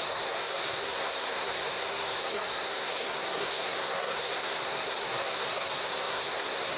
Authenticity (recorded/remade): remade